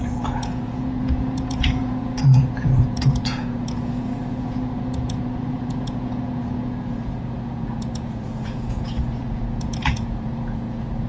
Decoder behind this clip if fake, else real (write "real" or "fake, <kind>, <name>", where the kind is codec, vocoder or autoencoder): fake, vocoder, Vocos